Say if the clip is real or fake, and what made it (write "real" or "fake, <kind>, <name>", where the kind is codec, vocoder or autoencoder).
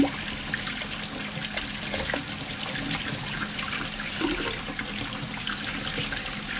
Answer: real